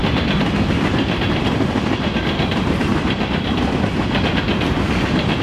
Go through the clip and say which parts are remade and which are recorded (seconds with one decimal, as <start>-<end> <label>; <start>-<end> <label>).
0.0-5.4 recorded